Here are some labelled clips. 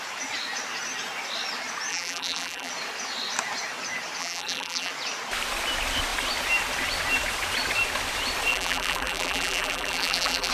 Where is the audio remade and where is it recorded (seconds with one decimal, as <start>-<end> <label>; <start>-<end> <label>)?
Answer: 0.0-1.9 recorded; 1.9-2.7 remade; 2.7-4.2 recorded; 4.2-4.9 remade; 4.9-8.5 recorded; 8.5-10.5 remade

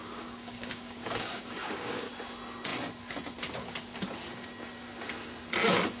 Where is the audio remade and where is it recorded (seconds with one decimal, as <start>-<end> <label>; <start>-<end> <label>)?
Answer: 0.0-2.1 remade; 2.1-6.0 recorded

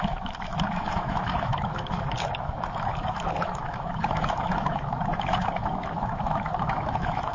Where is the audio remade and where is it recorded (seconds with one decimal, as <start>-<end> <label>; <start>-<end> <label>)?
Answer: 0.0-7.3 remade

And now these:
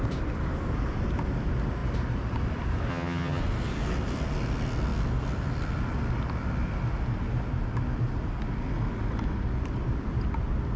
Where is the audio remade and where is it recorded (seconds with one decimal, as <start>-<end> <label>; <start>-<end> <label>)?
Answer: 0.0-2.9 recorded; 2.9-3.4 remade; 3.4-10.8 recorded

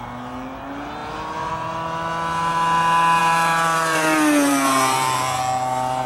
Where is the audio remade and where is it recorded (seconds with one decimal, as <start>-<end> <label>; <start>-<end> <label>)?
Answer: 0.0-1.0 recorded; 1.0-1.5 remade; 1.5-3.2 recorded; 3.2-5.4 remade; 5.4-6.1 recorded

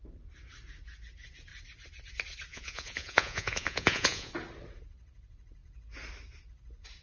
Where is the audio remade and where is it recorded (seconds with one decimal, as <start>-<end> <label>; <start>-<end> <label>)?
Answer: 0.0-2.5 recorded; 2.5-4.3 remade; 4.3-7.0 recorded

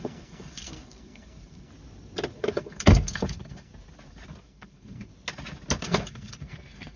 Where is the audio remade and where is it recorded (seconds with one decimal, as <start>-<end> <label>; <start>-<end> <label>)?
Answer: 0.0-1.7 remade; 1.7-2.4 recorded; 2.4-3.7 remade; 3.7-4.4 recorded; 4.4-5.1 remade; 5.1-5.8 recorded; 5.8-7.0 remade